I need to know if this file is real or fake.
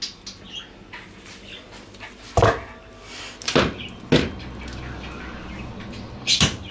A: real